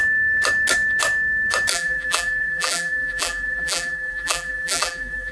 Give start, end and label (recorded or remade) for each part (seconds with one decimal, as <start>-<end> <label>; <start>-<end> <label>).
0.0-1.7 recorded; 1.7-5.3 remade